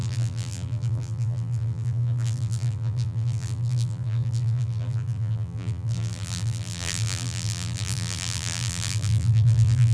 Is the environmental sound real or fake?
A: fake